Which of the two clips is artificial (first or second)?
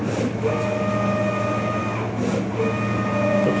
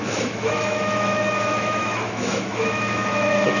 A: second